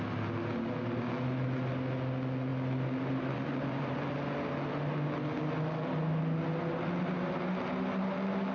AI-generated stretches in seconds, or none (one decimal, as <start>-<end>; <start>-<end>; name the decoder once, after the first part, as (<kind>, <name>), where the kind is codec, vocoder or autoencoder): none